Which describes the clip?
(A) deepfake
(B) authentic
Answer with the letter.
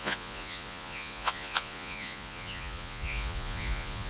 A